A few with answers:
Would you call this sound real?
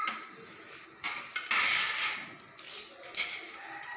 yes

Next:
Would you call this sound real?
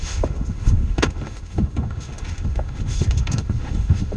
no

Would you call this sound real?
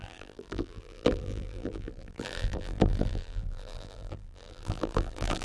no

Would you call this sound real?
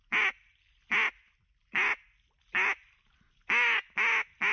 yes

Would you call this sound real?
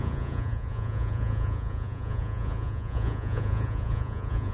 no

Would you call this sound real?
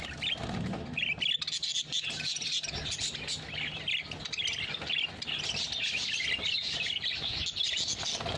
yes